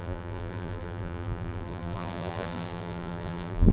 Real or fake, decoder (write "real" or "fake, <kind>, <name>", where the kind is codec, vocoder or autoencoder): fake, vocoder, BigVGAN v2